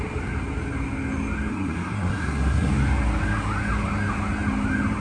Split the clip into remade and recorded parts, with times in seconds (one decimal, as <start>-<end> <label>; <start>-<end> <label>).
0.0-1.5 recorded; 1.5-2.7 remade; 2.7-5.0 recorded